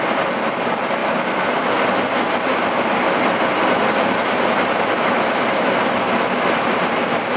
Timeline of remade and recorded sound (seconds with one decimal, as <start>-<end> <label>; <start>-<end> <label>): 0.0-7.4 recorded